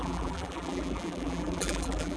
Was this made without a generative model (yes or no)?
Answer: no